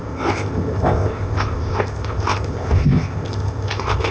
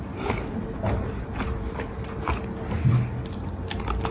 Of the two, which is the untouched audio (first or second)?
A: second